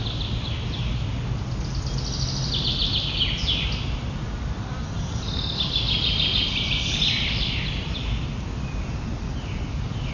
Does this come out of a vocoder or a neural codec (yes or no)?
no